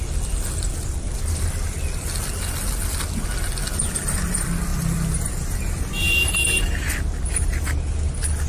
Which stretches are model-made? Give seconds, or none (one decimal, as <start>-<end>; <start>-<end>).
none